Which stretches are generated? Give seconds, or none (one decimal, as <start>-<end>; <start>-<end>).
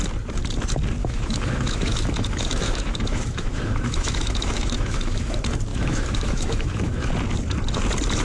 1.0-5.3; 5.7-7.1